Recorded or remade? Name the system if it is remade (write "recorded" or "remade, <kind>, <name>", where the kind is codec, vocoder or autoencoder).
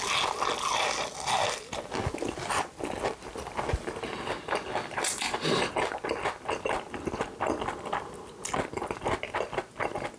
recorded